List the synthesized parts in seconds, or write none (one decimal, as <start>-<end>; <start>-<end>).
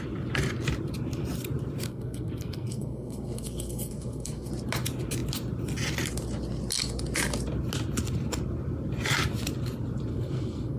1.9-4.5; 10.1-10.8